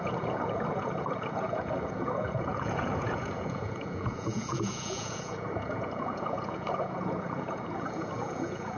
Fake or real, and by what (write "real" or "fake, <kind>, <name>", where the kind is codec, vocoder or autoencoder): fake, vocoder, Vocos